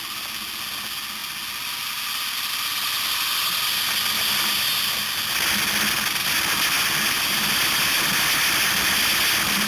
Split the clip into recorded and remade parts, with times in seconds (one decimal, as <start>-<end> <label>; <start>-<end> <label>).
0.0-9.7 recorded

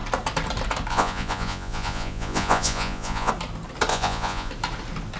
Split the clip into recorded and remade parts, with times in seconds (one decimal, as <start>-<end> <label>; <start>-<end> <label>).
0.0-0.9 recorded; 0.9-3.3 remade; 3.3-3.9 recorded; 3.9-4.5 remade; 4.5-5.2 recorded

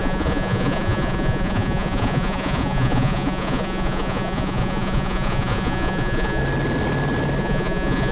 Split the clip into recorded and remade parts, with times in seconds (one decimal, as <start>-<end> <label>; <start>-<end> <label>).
0.0-6.4 remade; 6.4-7.4 recorded; 7.4-8.1 remade

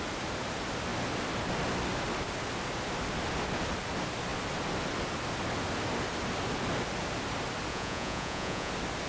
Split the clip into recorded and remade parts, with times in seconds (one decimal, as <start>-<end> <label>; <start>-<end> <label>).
0.0-7.7 recorded; 7.7-8.7 remade; 8.7-9.1 recorded

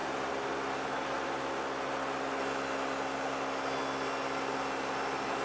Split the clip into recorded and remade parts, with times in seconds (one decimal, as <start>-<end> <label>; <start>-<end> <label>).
0.0-5.4 recorded

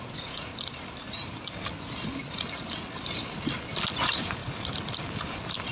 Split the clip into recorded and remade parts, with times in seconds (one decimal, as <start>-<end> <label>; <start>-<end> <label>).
0.0-0.5 remade; 0.5-3.9 recorded; 3.9-4.4 remade; 4.4-5.7 recorded

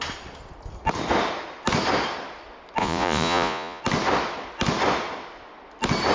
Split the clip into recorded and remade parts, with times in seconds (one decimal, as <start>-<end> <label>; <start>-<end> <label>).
0.0-2.8 recorded; 2.8-3.8 remade; 3.8-6.1 recorded